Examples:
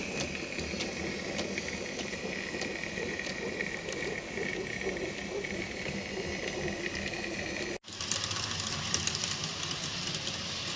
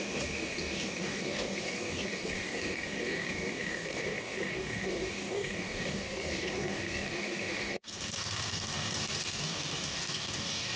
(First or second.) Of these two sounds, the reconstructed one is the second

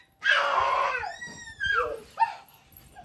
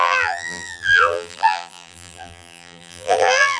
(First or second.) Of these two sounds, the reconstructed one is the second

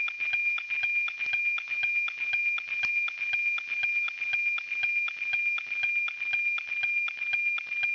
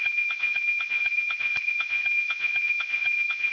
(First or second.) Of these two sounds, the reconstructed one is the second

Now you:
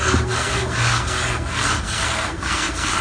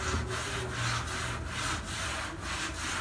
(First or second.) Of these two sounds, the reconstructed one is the first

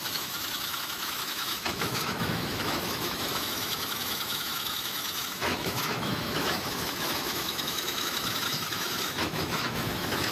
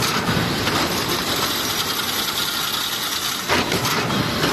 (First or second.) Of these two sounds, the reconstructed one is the first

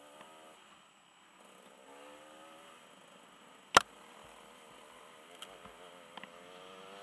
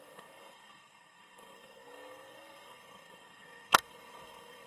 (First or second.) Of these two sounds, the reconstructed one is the second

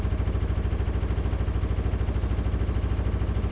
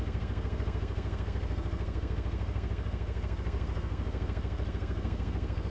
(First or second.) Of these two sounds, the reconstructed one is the second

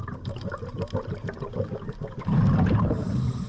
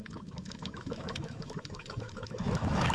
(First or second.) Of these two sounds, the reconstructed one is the second